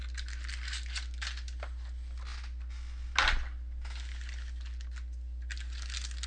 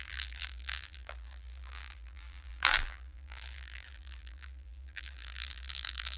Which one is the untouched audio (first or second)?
first